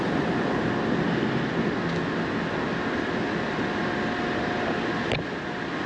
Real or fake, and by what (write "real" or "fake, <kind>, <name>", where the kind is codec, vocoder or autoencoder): real